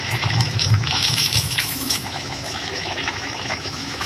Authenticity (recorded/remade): remade